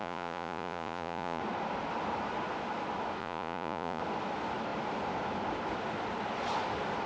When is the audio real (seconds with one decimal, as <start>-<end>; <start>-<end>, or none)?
1.4-3.2; 4.0-7.1